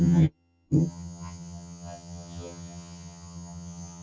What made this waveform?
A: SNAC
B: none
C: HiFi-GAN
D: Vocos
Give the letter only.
C